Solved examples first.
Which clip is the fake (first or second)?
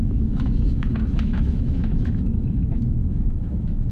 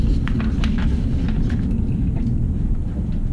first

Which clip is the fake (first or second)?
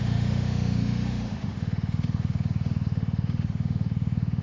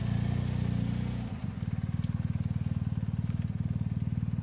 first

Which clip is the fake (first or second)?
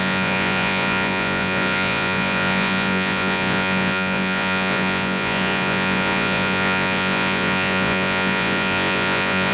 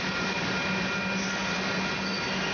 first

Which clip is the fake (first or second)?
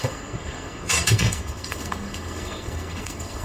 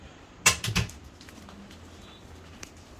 first